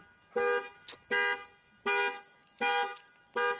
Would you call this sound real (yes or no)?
yes